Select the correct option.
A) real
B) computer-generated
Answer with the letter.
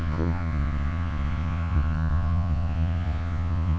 B